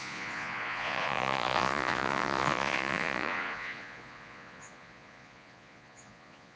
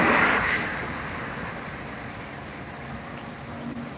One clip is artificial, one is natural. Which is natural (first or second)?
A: second